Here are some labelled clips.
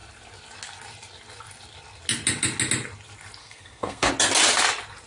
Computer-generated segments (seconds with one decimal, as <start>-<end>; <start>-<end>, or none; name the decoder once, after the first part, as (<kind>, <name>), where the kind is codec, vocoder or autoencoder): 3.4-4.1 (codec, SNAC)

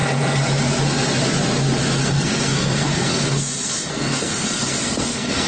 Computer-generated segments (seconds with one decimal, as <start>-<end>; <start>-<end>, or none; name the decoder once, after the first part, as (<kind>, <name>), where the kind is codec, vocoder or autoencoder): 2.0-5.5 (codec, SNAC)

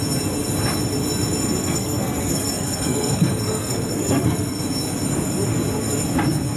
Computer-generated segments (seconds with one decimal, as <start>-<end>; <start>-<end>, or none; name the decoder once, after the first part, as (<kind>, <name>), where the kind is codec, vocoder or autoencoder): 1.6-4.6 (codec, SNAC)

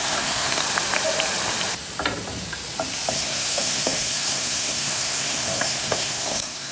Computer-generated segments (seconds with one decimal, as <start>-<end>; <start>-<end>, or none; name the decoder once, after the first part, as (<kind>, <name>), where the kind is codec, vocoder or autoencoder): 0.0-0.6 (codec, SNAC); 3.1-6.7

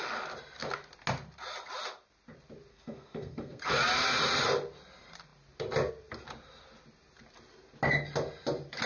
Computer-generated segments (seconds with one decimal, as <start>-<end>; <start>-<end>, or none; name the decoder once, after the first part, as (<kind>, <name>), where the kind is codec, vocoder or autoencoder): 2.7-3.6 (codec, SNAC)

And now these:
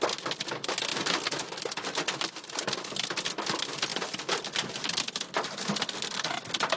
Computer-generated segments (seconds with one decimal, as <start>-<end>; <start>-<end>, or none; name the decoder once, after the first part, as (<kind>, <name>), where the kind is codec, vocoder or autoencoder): none

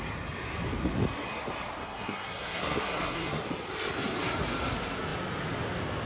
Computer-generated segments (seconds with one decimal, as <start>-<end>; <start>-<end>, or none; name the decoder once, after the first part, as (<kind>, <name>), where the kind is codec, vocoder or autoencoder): 1.8-3.5 (codec, SNAC)